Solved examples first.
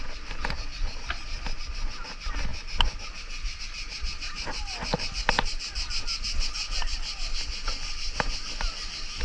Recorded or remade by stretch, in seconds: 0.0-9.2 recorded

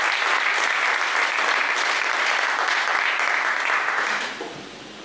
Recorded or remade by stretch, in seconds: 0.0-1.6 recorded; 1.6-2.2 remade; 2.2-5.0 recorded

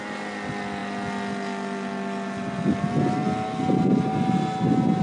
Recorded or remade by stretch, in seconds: 0.0-5.0 recorded

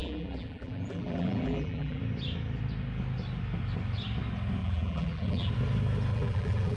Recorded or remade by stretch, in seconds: 0.0-2.0 remade; 2.0-4.6 recorded; 4.6-5.5 remade; 5.5-6.1 recorded; 6.1-6.8 remade